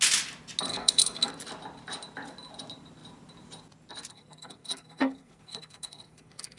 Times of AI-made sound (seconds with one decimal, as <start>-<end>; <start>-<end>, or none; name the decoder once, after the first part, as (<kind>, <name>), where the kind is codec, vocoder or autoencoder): 0.7-1.3 (codec, SNAC); 4.1-6.6